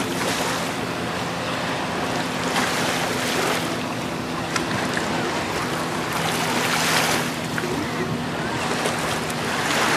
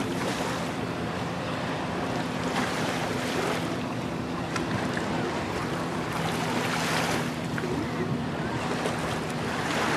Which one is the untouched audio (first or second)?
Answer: first